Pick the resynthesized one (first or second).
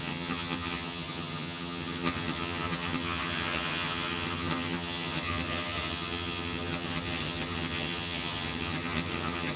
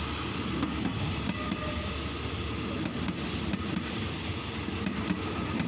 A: first